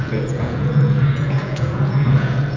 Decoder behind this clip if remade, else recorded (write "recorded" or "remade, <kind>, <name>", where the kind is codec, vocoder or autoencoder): remade, vocoder, Vocos